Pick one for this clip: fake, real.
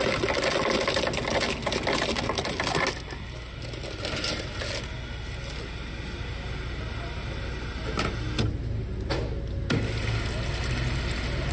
real